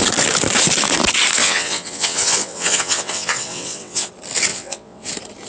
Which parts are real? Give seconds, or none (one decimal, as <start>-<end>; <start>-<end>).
0.0-1.4; 4.1-4.5; 5.1-5.5